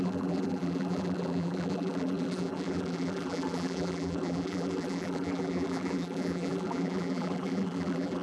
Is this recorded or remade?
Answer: remade